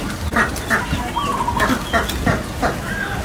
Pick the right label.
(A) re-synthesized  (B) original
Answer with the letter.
B